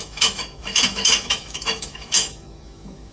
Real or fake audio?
fake